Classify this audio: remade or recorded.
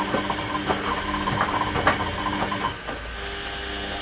recorded